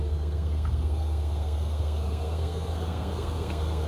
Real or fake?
fake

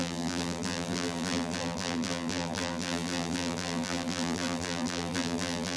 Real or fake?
fake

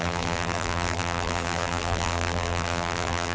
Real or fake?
fake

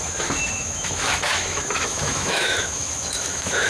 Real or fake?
fake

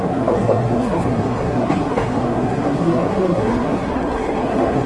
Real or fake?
fake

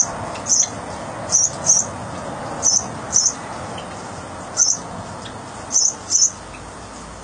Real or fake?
real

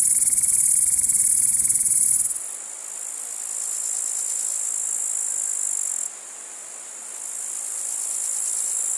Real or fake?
real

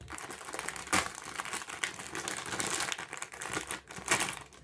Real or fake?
real